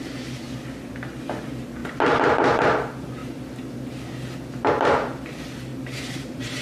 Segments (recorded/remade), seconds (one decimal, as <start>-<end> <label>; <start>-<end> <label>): 0.0-5.7 recorded; 5.7-6.6 remade